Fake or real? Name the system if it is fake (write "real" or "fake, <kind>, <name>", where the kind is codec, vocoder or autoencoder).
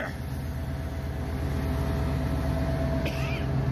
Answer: real